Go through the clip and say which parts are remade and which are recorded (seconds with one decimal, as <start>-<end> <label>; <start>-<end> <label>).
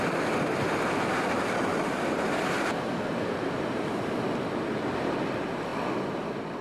0.0-1.7 recorded; 1.7-3.9 remade; 3.9-6.6 recorded